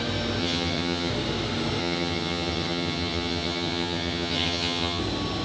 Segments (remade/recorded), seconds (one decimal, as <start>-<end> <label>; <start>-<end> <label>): 0.0-0.4 recorded; 0.4-1.1 remade; 1.1-1.8 recorded; 1.8-5.0 remade; 5.0-5.4 recorded